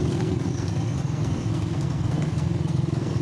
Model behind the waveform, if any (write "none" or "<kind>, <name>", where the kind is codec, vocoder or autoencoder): codec, SNAC